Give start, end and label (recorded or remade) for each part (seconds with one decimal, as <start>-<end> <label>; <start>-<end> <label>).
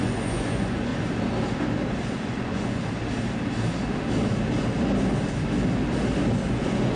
0.0-0.9 remade; 0.9-2.1 recorded; 2.1-2.8 remade; 2.8-6.5 recorded; 6.5-7.0 remade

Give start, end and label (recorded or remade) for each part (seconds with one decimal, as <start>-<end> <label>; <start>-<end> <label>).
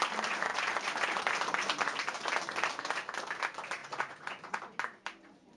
0.0-3.8 recorded; 3.8-4.6 remade; 4.6-5.6 recorded